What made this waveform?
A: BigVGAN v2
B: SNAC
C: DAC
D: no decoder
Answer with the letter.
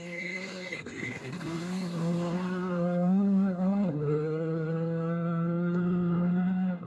B